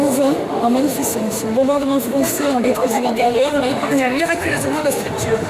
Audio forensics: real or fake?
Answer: fake